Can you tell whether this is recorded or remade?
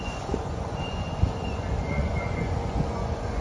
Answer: remade